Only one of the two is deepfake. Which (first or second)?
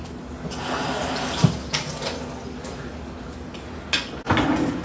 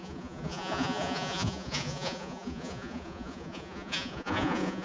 second